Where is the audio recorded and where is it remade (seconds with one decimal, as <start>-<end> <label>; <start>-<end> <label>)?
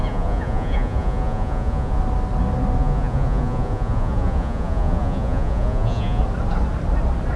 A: 0.0-2.0 remade; 2.0-2.8 recorded; 2.8-6.2 remade; 6.2-7.4 recorded